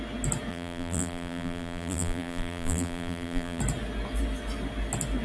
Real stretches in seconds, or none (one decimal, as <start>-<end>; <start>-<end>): 0.0-0.5; 3.6-5.2